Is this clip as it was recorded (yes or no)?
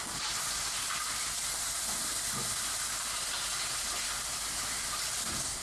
yes